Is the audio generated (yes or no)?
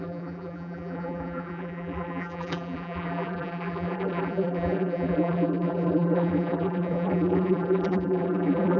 yes